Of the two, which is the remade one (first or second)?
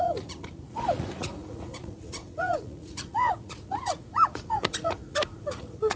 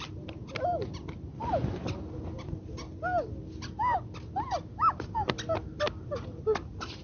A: first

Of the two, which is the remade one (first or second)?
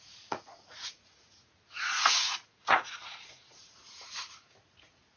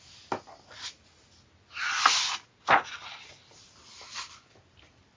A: first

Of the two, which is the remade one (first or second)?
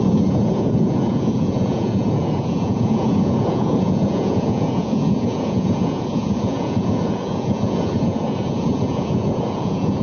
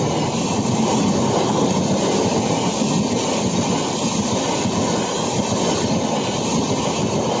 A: first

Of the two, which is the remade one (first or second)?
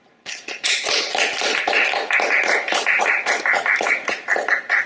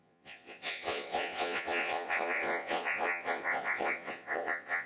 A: second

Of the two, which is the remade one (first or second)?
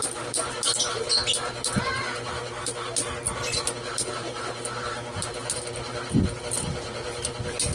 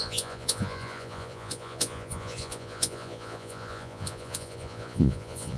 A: second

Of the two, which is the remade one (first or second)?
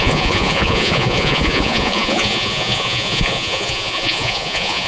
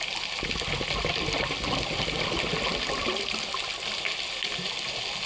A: first